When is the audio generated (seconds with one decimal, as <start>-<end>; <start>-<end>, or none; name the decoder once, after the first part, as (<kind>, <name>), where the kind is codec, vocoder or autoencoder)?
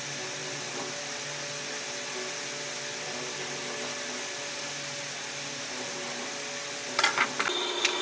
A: none